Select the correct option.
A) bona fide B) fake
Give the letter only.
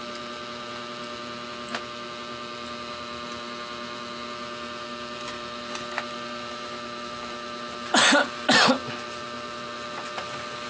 A